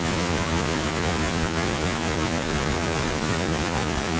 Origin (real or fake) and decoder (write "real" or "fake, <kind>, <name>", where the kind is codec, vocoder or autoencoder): fake, vocoder, Vocos